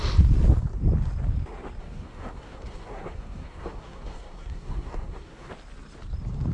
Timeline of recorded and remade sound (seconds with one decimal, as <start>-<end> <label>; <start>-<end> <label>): 0.0-1.8 recorded; 1.8-5.5 remade; 5.5-6.5 recorded

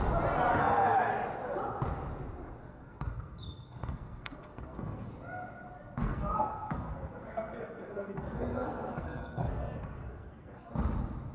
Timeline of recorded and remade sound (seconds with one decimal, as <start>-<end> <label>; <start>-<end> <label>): 0.0-0.5 recorded; 0.5-1.1 remade; 1.1-2.7 recorded; 2.7-5.1 remade; 5.1-6.0 recorded; 6.0-10.7 remade; 10.7-11.3 recorded

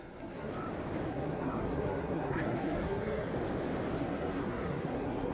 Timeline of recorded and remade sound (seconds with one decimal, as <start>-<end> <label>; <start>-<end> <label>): 0.0-0.5 remade; 0.5-1.1 recorded; 1.1-3.3 remade; 3.3-4.0 recorded; 4.0-5.3 remade